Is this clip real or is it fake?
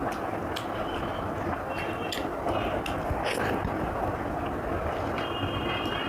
real